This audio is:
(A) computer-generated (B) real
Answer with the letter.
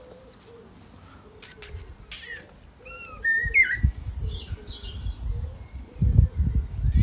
B